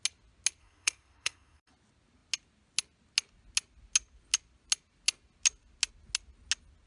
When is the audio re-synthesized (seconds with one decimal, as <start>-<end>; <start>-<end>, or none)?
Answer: 0.6-1.7